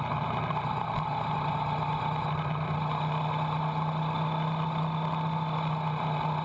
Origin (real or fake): real